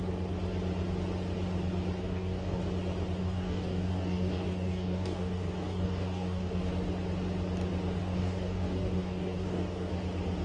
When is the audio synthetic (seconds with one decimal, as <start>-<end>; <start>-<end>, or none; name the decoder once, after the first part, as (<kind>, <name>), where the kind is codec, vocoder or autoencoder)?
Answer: 2.0-2.6 (codec, DAC); 3.2-6.7; 8.0-9.9